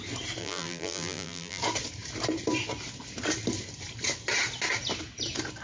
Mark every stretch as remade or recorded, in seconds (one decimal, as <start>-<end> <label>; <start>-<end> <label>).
0.0-0.4 recorded; 0.4-1.6 remade; 1.6-5.6 recorded